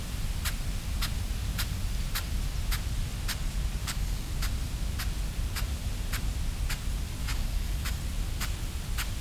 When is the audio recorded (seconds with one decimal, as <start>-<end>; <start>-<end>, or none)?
0.0-3.8; 4.3-7.2; 8.0-9.2